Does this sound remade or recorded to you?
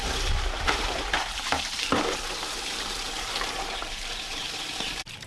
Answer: remade